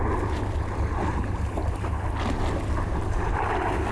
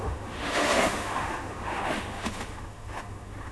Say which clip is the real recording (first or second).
first